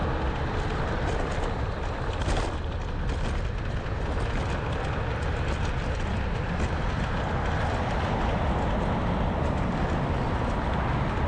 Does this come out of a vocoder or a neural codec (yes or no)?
no